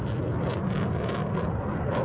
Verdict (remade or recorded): recorded